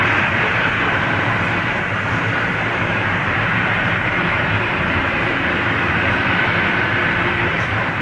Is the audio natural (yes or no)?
no